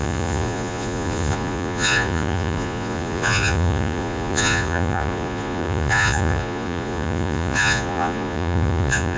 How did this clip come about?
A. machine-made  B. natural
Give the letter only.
A